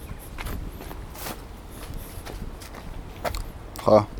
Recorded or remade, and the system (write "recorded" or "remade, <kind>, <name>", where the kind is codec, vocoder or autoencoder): recorded